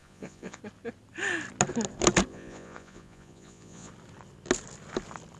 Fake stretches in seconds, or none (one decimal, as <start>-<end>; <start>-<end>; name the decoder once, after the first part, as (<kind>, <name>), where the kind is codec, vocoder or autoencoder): 0.0-0.6 (vocoder, Vocos); 2.3-3.9